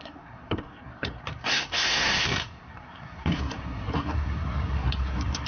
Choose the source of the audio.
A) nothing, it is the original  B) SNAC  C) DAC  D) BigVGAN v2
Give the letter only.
B